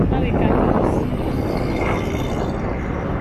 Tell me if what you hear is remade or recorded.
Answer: recorded